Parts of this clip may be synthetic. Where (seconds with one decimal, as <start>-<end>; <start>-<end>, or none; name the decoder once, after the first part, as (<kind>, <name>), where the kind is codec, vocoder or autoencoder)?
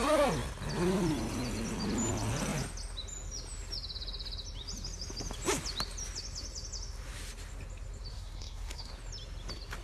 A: 8.1-8.9 (codec, SNAC)